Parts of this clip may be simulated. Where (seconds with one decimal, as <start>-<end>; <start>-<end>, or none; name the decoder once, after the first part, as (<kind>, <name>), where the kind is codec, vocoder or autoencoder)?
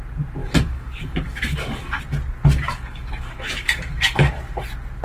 0.4-2.0 (codec, DAC); 2.7-4.3